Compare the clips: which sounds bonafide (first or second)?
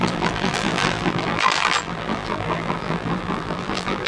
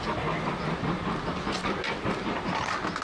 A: second